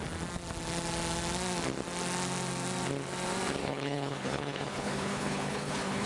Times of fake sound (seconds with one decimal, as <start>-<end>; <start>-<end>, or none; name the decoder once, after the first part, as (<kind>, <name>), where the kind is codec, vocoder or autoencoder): 3.6-6.1 (codec, HILCodec)